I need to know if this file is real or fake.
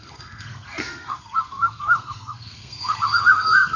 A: fake